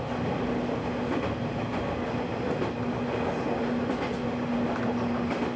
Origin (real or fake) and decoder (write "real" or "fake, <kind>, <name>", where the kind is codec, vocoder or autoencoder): real